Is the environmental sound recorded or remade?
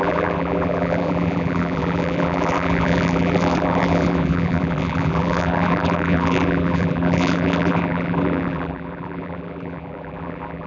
remade